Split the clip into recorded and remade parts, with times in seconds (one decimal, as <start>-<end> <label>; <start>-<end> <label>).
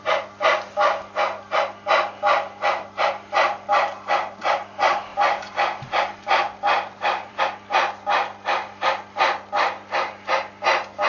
0.0-5.1 recorded; 5.1-7.4 remade; 7.4-11.1 recorded